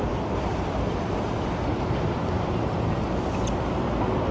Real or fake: real